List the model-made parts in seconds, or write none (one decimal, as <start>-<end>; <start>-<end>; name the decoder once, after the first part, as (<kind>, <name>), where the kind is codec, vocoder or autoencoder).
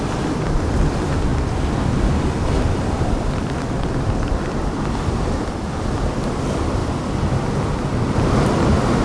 0.0-6.8 (vocoder, BigVGAN v2); 7.7-9.0